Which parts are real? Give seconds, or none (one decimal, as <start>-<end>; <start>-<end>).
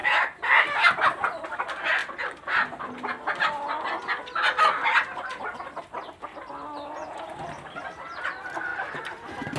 0.0-9.6